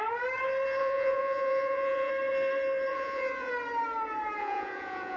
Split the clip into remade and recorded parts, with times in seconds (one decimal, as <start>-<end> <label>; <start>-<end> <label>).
0.0-0.8 recorded; 0.8-2.1 remade; 2.1-2.9 recorded; 2.9-3.5 remade; 3.5-4.4 recorded; 4.4-5.2 remade